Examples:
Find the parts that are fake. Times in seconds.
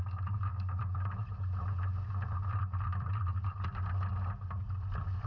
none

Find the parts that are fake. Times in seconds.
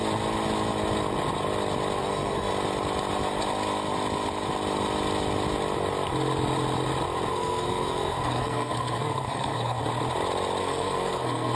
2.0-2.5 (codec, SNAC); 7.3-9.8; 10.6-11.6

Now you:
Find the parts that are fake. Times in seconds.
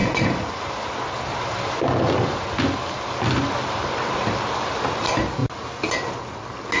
none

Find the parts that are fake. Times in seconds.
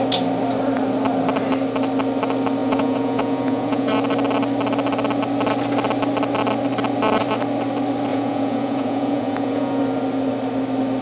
2.6-3.9 (vocoder, Vocos); 8.1-9.8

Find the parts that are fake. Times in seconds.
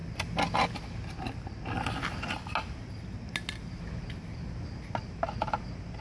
none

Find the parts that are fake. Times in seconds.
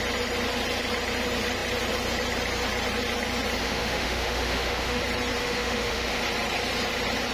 3.6-5.0 (autoencoder, DAC-VAE); 5.4-6.2